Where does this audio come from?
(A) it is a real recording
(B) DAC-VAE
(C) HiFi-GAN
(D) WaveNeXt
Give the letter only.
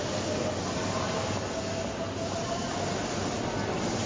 A